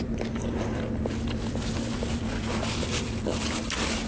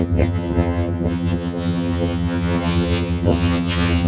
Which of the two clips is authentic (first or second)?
first